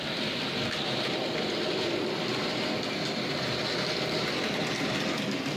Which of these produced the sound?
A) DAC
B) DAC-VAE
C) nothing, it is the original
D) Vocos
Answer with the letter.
C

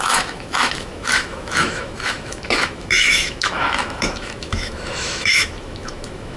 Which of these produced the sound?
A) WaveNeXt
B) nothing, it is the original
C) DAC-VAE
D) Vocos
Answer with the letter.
C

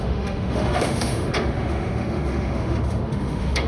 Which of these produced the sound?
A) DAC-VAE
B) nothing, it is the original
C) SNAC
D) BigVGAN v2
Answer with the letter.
A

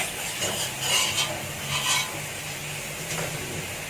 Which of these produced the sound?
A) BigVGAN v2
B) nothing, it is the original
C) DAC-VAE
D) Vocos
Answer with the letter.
B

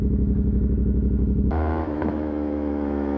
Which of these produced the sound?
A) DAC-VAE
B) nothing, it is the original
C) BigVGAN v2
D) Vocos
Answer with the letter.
A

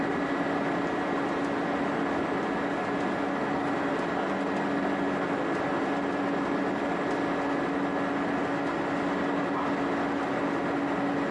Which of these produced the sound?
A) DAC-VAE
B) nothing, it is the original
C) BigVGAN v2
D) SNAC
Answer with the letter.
B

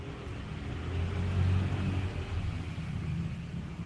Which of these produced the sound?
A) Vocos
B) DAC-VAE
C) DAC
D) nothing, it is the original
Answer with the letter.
D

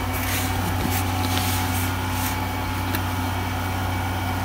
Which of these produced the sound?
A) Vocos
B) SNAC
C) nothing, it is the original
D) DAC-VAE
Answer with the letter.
C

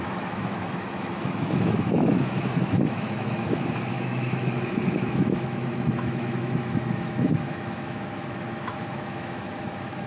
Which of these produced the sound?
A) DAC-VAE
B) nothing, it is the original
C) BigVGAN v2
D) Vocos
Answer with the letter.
A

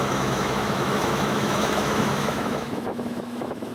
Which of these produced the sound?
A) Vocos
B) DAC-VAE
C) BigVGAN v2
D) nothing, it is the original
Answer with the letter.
B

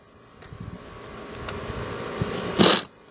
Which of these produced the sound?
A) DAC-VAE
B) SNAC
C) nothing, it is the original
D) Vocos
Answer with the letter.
C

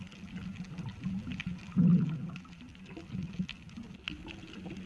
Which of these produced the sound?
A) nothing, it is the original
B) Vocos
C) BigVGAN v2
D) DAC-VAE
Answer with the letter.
A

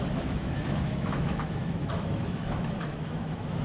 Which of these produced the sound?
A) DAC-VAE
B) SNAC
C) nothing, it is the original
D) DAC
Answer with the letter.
A